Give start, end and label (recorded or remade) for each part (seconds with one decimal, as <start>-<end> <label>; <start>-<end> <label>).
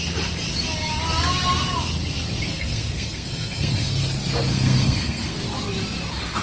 0.0-2.5 recorded; 2.5-3.9 remade; 3.9-4.5 recorded; 4.5-5.4 remade; 5.4-6.4 recorded